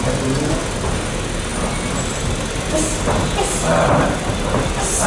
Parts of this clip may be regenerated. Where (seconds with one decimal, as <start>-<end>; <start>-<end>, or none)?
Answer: none